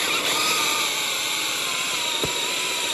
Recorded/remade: remade